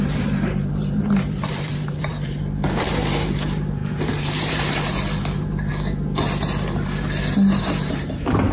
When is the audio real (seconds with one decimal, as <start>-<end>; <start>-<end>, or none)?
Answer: 5.7-7.6